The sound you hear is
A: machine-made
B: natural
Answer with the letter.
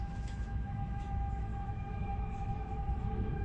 A